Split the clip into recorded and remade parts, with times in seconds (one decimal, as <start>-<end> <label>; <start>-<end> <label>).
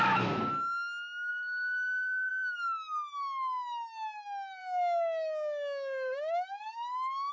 0.0-1.3 recorded; 1.3-2.3 remade; 2.3-4.6 recorded; 4.6-7.3 remade